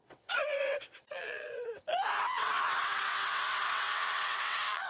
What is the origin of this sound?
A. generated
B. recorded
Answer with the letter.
A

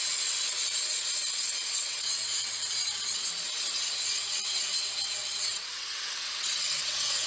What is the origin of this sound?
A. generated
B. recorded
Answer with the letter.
A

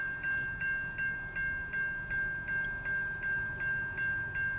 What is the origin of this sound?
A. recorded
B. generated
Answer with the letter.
A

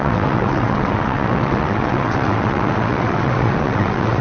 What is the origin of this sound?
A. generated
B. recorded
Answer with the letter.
A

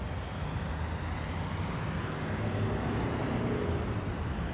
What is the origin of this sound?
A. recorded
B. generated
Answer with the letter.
A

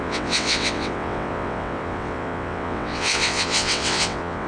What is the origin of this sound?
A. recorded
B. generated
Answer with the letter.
B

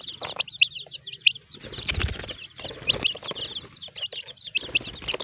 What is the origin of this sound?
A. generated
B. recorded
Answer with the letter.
B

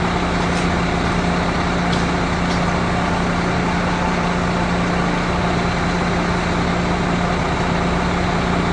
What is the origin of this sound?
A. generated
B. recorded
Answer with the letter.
B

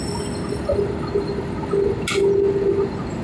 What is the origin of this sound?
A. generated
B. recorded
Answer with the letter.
B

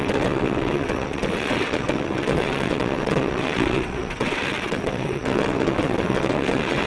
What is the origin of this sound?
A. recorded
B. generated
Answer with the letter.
B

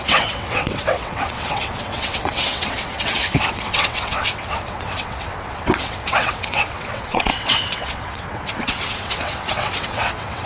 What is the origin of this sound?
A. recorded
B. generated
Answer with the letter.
B